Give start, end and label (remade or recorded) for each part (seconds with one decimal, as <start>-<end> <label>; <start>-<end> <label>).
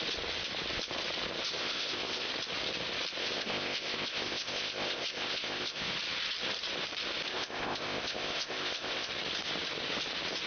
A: 0.0-1.6 recorded; 1.6-2.3 remade; 2.3-3.2 recorded; 3.2-5.9 remade; 5.9-7.3 recorded; 7.3-9.1 remade; 9.1-10.5 recorded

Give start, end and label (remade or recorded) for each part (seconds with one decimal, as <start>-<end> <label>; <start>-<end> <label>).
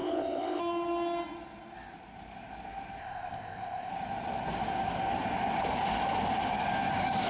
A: 0.0-0.6 remade; 0.6-3.0 recorded; 3.0-3.9 remade; 3.9-7.3 recorded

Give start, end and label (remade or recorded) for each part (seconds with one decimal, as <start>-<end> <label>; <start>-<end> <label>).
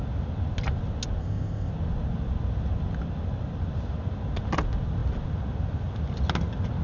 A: 0.0-1.2 recorded; 1.2-1.7 remade; 1.7-6.8 recorded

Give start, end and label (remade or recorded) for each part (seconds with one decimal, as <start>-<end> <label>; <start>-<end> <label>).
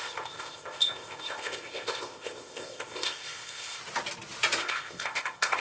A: 0.0-3.8 remade; 3.8-4.6 recorded; 4.6-5.6 remade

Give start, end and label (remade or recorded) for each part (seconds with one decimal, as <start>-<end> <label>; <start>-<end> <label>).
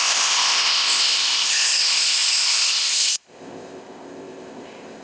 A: 0.0-5.0 remade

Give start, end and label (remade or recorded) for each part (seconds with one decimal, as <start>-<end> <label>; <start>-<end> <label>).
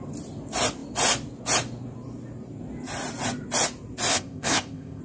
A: 0.0-4.1 recorded; 4.1-5.0 remade